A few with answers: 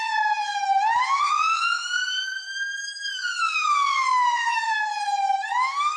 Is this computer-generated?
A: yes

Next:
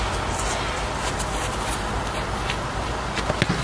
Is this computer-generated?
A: no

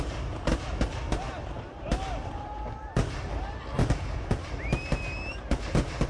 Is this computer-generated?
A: no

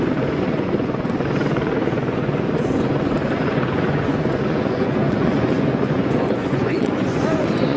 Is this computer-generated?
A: yes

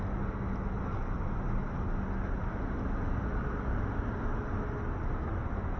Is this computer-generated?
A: no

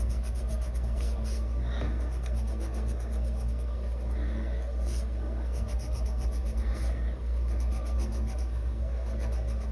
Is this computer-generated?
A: yes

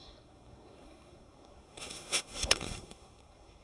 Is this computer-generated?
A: yes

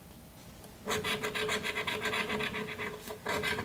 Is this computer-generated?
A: no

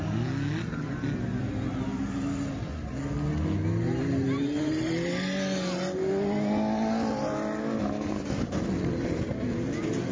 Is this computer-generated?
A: no